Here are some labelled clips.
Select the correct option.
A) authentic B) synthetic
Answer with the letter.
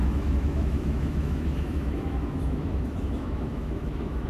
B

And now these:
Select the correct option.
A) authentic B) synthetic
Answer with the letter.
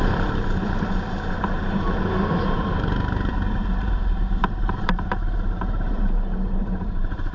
B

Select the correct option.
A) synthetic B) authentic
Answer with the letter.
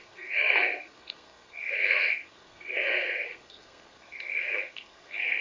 A